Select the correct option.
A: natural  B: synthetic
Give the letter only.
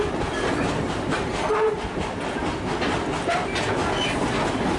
A